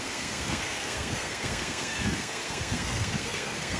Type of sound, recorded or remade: remade